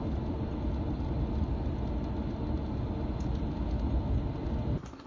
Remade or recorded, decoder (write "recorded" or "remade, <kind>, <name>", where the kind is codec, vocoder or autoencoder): recorded